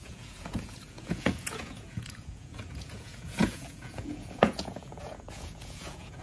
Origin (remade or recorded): remade